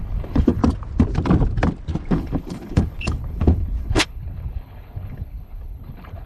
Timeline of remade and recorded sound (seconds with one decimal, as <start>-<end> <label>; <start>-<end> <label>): 0.0-0.6 remade; 0.6-2.1 recorded; 2.1-6.3 remade